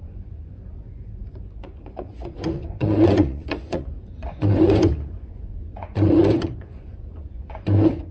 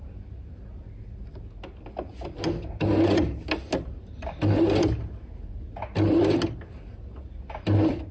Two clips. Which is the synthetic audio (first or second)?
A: first